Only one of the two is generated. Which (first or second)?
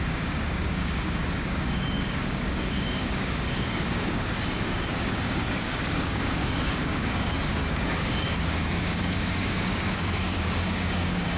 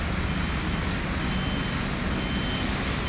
first